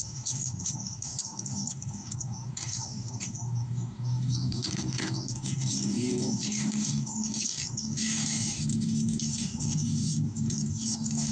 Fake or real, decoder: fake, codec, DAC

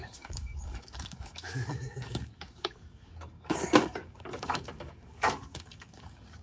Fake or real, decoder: fake, codec, DAC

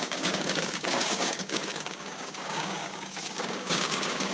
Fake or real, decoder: fake, codec, DAC